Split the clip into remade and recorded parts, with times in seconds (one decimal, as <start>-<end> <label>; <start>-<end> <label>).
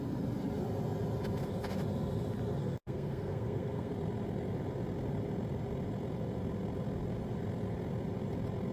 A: 0.0-2.6 recorded; 2.6-3.9 remade; 3.9-8.7 recorded